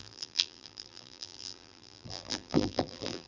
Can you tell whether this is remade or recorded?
remade